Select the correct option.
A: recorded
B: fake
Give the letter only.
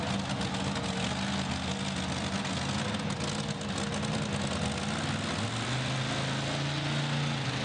A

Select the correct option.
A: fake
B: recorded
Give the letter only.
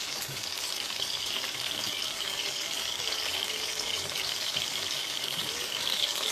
A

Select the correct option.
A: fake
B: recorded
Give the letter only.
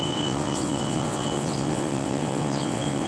A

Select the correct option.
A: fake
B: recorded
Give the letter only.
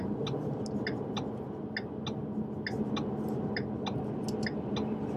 B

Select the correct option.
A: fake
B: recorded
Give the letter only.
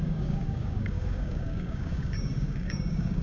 A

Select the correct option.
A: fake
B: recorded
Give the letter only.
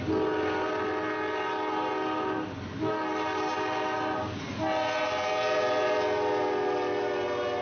B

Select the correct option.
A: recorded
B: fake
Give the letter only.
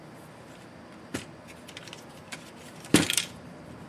A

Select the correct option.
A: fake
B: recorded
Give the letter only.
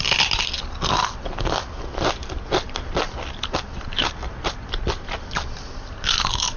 B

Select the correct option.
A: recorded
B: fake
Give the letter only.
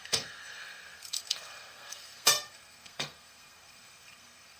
B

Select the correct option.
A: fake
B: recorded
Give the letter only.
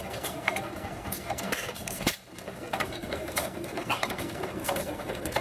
A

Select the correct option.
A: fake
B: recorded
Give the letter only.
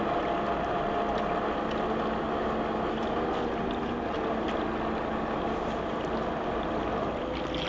B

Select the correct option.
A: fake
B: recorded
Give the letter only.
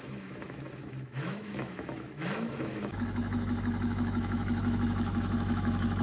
A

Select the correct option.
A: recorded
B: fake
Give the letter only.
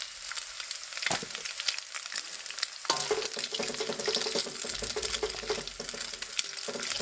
A